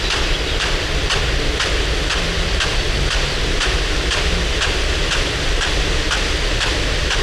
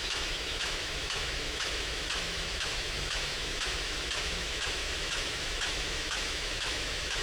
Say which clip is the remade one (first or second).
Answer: second